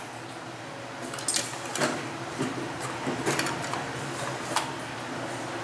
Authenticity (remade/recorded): recorded